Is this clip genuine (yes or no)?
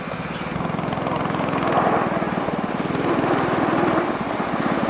yes